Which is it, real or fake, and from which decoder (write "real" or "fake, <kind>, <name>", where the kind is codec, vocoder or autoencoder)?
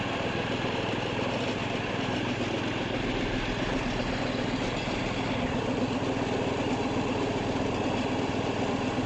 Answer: real